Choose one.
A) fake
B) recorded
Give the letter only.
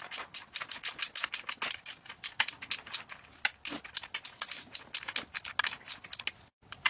B